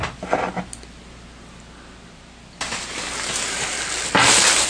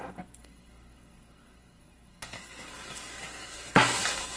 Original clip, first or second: first